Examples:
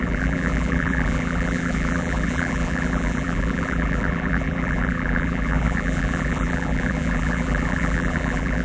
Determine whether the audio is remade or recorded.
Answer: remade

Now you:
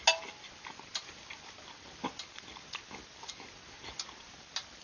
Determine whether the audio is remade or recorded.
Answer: recorded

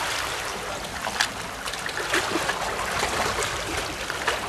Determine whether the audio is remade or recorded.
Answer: recorded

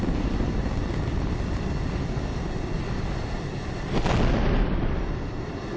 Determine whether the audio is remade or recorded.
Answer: recorded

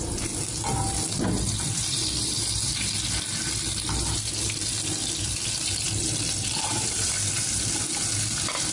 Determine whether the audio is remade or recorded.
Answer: remade